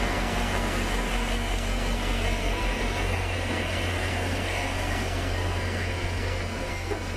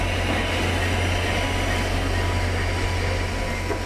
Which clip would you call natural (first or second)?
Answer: second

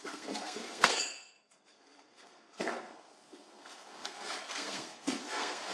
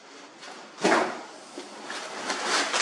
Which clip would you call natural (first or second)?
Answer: second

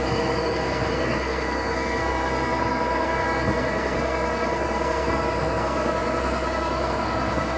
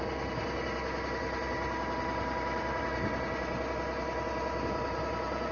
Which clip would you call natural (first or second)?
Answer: second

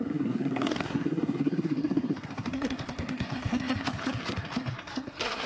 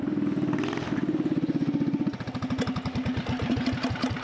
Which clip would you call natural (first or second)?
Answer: second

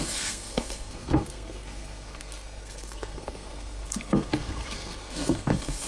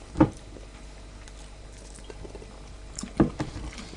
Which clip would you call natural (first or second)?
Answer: second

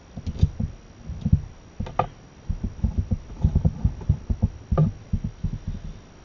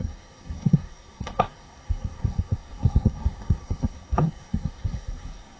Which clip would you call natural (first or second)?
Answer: first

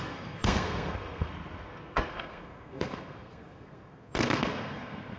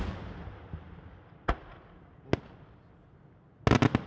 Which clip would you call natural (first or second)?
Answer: second